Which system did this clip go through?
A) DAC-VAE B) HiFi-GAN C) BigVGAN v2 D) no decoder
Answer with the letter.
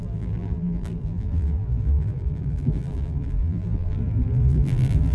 C